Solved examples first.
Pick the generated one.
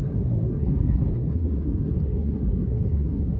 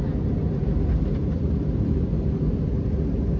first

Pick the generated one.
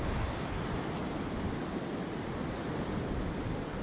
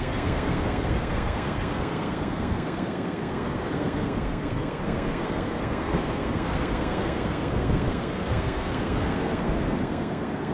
second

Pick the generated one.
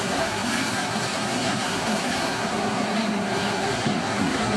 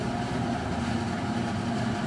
first